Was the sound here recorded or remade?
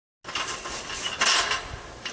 recorded